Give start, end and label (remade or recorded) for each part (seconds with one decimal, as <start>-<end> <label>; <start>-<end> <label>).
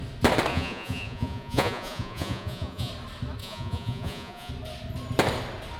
0.0-0.5 recorded; 0.5-2.9 remade; 2.9-3.4 recorded; 3.4-4.5 remade; 4.5-5.8 recorded